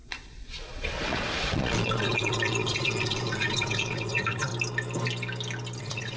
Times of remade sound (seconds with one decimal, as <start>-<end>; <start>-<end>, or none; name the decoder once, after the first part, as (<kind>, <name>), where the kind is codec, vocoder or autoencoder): 0.0-4.5 (vocoder, Vocos); 5.8-6.2